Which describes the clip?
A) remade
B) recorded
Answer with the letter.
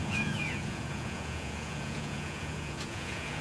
A